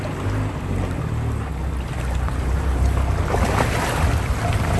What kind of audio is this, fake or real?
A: real